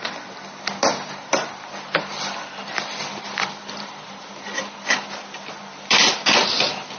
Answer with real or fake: real